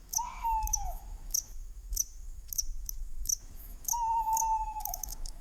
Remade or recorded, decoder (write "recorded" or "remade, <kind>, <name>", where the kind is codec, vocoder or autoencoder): remade, autoencoder, DAC-VAE